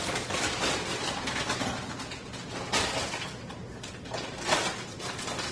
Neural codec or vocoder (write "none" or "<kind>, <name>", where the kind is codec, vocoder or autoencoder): none